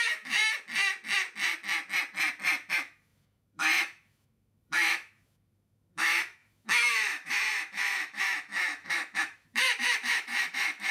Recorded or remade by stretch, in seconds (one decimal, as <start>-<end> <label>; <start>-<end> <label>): 0.0-0.4 remade; 0.4-2.7 recorded; 2.7-10.9 remade